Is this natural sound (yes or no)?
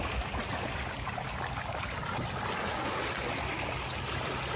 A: yes